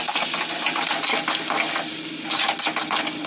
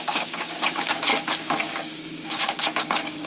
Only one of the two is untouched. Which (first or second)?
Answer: first